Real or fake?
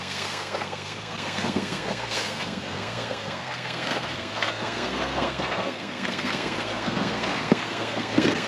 fake